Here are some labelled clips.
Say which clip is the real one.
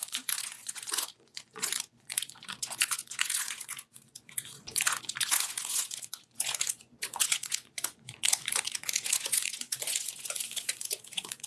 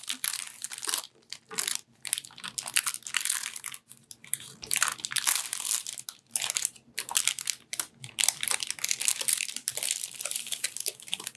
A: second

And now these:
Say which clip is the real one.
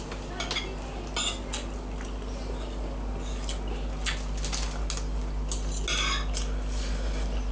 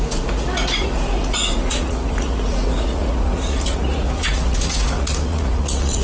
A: first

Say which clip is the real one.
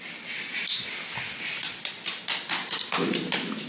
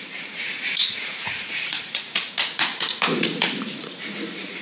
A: first